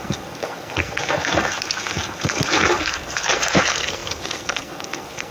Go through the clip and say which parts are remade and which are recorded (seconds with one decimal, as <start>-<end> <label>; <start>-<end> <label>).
0.0-5.3 remade

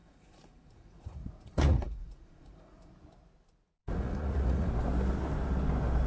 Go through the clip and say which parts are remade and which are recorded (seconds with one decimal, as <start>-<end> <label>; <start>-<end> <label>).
0.0-2.9 remade; 2.9-3.8 recorded; 3.8-4.7 remade; 4.7-6.1 recorded

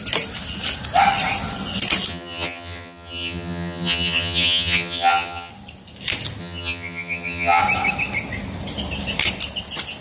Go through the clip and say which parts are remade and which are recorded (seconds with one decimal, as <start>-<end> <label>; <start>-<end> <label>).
0.0-2.1 recorded; 2.1-5.5 remade; 5.5-6.4 recorded; 6.4-7.6 remade; 7.6-10.0 recorded

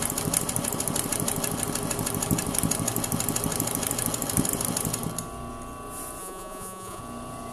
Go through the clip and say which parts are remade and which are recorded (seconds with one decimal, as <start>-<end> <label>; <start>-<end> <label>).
0.0-6.2 recorded; 6.2-7.0 remade; 7.0-7.5 recorded